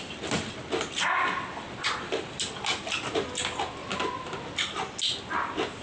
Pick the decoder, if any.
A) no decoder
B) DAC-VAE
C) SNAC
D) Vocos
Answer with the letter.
A